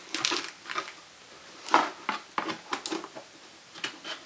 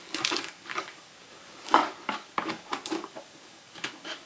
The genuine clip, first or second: first